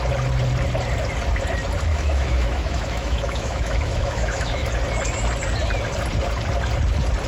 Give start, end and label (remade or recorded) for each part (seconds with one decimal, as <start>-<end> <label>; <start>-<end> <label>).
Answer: 0.0-1.9 recorded; 1.9-4.7 remade; 4.7-7.3 recorded